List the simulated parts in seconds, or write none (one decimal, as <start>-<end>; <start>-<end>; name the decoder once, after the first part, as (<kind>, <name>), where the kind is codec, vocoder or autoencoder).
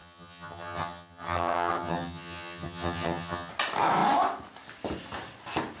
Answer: 0.0-3.5 (vocoder, HiFi-GAN)